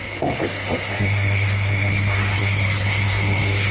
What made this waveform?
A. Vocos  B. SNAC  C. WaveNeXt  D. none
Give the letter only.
B